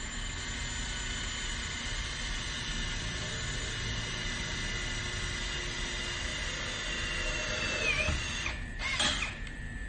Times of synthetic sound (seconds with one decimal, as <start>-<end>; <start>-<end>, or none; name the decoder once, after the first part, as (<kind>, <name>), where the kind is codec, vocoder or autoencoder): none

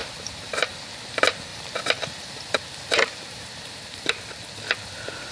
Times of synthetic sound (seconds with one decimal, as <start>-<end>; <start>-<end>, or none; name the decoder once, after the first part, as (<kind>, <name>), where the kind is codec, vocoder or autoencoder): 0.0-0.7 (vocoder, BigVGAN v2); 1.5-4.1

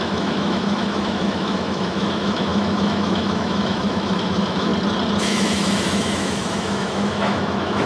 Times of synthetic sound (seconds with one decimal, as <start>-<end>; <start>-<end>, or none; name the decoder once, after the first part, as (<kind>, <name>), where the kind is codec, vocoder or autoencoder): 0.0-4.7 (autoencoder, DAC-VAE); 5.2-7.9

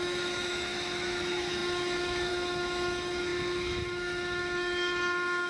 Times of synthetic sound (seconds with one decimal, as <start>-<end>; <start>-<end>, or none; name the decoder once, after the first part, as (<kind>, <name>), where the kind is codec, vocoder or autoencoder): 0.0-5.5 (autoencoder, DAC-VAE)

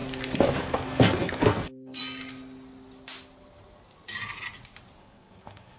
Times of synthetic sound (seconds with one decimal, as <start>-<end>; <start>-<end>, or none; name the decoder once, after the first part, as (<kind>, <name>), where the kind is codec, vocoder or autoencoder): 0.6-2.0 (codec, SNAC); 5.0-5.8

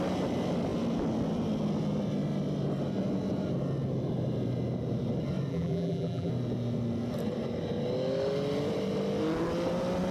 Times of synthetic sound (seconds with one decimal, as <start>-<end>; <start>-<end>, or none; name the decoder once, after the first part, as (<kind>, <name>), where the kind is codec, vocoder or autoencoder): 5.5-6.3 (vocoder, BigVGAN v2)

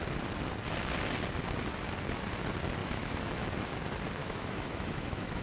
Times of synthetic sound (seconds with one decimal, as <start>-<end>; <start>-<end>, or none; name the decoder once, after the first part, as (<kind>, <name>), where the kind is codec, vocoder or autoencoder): 2.8-3.7 (autoencoder, DAC-VAE); 4.2-5.4